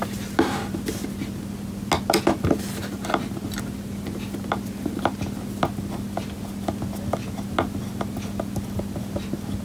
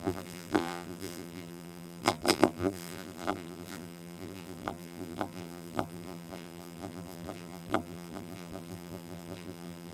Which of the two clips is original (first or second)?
first